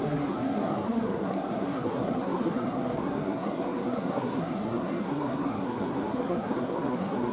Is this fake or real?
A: fake